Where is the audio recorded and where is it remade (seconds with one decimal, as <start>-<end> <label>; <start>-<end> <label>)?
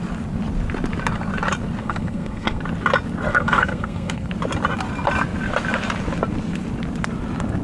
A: 0.0-1.8 recorded; 1.8-2.6 remade; 2.6-3.3 recorded; 3.3-4.3 remade; 4.3-7.6 recorded